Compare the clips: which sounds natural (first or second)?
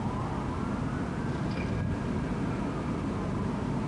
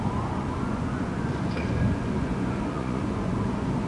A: first